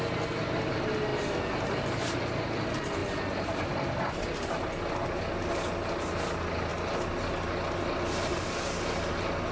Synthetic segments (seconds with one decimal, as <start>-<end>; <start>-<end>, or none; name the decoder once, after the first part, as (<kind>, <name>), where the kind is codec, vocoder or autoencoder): none